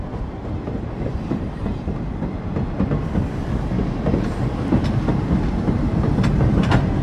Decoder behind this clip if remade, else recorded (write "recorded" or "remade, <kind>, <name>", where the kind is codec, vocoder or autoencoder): recorded